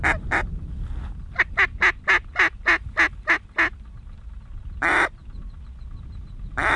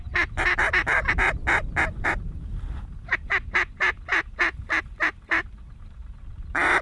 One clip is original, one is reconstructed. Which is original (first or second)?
first